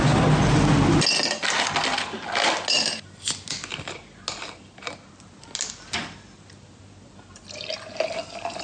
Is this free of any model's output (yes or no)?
yes